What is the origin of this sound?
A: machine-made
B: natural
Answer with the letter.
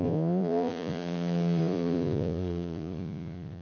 A